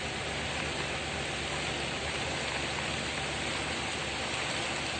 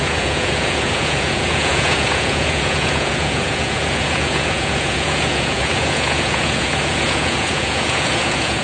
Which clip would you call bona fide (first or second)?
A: first